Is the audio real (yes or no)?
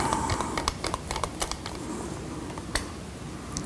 yes